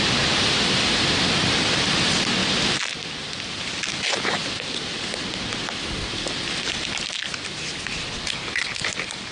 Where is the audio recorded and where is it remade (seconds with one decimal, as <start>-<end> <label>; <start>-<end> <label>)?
0.0-9.3 recorded